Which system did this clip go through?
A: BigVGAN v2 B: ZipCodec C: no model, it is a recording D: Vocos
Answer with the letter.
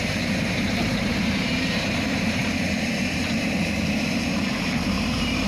A